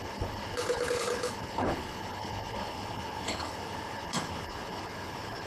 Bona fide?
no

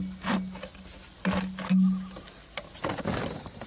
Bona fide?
yes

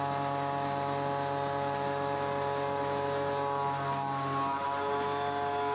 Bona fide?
yes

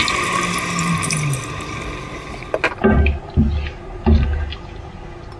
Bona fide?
yes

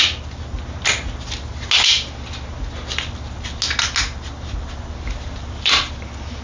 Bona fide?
yes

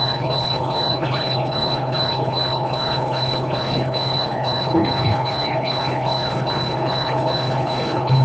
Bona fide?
no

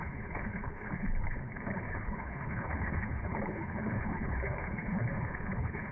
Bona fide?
no